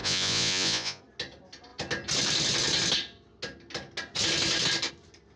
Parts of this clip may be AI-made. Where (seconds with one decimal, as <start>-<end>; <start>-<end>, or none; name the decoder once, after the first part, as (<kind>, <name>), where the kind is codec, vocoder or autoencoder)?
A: 0.0-1.0 (vocoder, Vocos)